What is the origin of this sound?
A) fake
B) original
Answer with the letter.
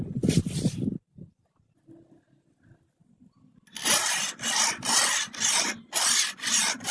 B